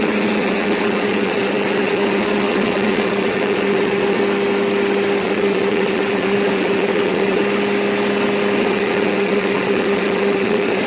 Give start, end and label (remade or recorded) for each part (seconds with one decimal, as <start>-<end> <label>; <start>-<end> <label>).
0.0-4.2 remade; 4.2-5.2 recorded; 5.2-7.4 remade; 7.4-8.6 recorded; 8.6-10.9 remade